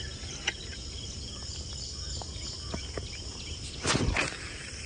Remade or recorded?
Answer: recorded